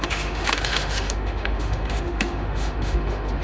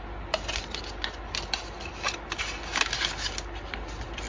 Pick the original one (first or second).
second